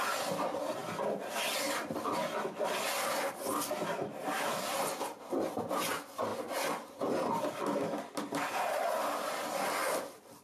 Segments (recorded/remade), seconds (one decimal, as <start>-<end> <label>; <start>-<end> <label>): 0.0-10.4 recorded